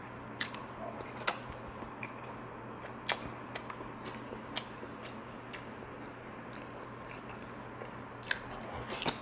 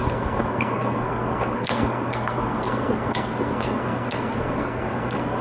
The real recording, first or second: first